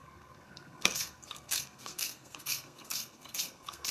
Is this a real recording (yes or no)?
no